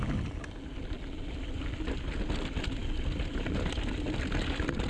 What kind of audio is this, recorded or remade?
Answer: recorded